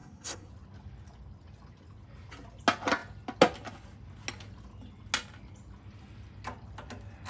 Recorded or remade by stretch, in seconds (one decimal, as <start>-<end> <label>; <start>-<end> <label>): 0.0-0.5 remade; 0.5-7.3 recorded